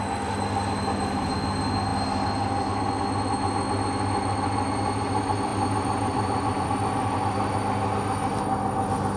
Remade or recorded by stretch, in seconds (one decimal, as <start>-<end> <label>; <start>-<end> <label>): 0.0-5.5 recorded; 5.5-6.7 remade; 6.7-9.2 recorded